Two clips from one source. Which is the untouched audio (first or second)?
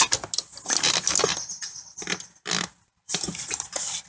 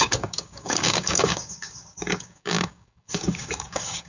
first